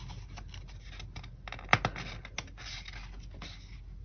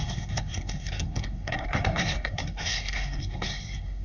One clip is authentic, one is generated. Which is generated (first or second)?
second